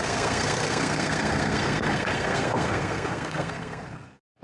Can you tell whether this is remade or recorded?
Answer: remade